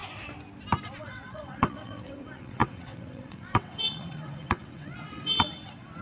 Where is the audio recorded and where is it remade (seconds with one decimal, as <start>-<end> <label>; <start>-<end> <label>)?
0.0-0.8 recorded; 0.8-6.0 remade

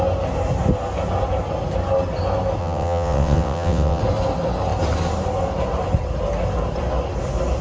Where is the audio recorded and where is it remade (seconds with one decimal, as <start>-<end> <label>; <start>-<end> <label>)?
0.0-2.6 recorded; 2.6-4.0 remade; 4.0-7.6 recorded

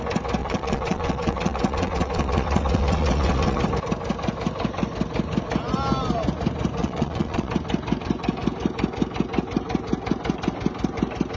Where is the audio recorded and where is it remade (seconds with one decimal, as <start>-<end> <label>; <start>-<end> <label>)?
0.0-0.4 recorded; 0.4-3.6 remade; 3.6-6.8 recorded; 6.8-7.5 remade; 7.5-11.4 recorded

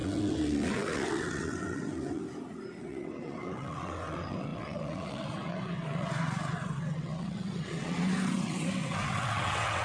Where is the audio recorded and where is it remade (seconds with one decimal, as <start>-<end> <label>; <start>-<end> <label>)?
0.0-2.2 remade; 2.2-2.8 recorded; 2.8-9.8 remade

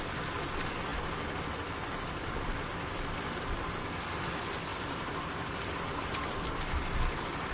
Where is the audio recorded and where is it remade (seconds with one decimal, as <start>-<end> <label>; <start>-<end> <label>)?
0.0-7.5 recorded

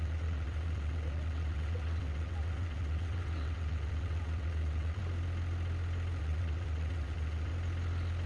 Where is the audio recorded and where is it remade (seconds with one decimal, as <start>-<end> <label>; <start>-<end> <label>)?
0.0-5.0 remade; 5.0-6.2 recorded; 6.2-7.5 remade; 7.5-8.3 recorded

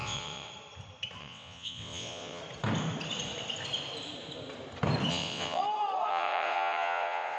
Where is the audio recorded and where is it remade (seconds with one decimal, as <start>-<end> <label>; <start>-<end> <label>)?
0.0-0.5 remade; 0.5-1.2 recorded; 1.2-2.4 remade; 2.4-5.1 recorded; 5.1-5.6 remade; 5.6-6.1 recorded; 6.1-7.4 remade

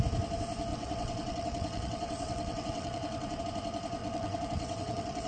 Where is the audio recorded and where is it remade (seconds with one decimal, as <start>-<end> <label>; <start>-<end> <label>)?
0.0-0.7 recorded; 0.7-3.4 remade; 3.4-4.0 recorded; 4.0-5.3 remade